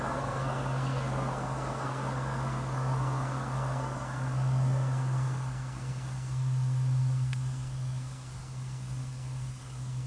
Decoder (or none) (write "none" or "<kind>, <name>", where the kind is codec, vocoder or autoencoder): codec, SNAC